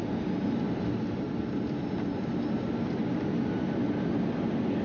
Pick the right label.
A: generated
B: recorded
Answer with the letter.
B